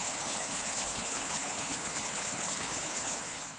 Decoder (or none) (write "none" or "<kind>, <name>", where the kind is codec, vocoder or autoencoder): codec, HILCodec